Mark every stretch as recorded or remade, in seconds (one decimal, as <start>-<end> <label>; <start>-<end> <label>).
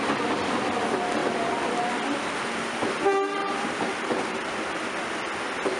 0.0-3.4 recorded; 3.4-4.6 remade; 4.6-5.8 recorded